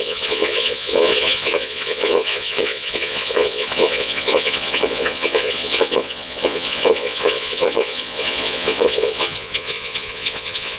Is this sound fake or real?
fake